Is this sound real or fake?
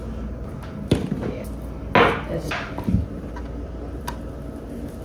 real